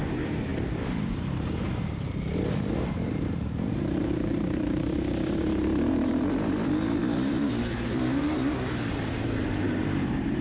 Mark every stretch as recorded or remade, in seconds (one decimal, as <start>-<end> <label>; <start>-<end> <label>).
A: 0.0-0.5 remade; 0.5-2.9 recorded; 2.9-10.4 remade